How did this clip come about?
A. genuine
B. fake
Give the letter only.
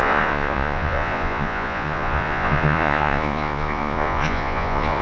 B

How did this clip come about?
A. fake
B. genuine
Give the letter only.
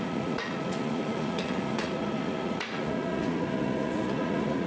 A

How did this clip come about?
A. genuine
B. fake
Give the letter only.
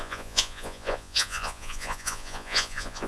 B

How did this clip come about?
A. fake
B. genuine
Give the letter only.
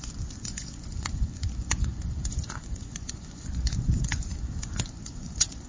A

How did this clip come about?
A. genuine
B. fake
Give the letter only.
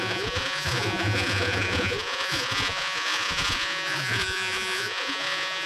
B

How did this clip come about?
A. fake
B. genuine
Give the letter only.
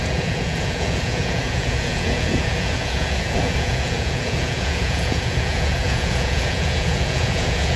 A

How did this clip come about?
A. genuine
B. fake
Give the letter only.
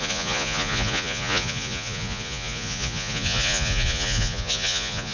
B